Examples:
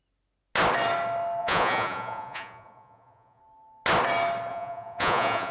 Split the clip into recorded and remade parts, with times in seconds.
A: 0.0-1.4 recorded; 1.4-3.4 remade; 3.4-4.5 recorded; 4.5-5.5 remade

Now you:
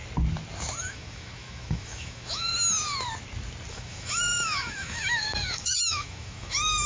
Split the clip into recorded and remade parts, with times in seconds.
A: 0.0-0.8 recorded; 0.8-2.5 remade; 2.5-3.7 recorded; 3.7-6.9 remade

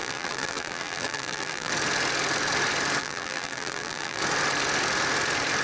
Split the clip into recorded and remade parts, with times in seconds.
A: 0.0-1.7 remade; 1.7-3.0 recorded; 3.0-4.2 remade; 4.2-5.6 recorded

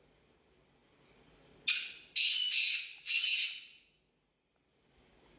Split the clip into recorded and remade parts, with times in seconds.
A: 0.0-5.4 recorded

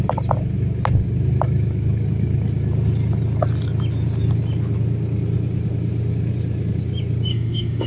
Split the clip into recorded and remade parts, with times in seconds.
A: 0.0-7.3 recorded; 7.3-7.9 remade

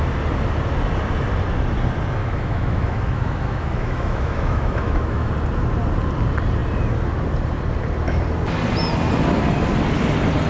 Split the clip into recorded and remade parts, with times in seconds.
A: 0.0-2.2 recorded; 2.2-5.3 remade; 5.3-10.5 recorded

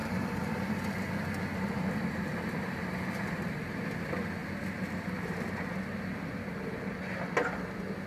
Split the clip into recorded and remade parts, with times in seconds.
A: 0.0-0.9 remade; 0.9-8.1 recorded